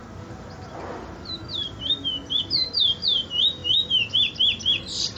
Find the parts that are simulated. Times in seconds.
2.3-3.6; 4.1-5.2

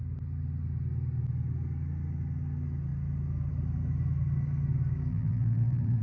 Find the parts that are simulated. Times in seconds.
5.1-6.0

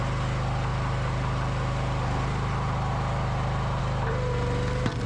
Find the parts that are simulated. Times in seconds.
0.7-3.8

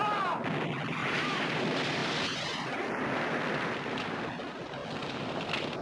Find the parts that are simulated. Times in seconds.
1.0-1.6

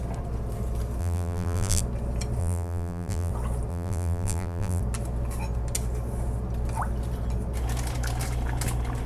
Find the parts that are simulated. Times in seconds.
1.0-1.8; 2.4-3.3; 3.7-4.8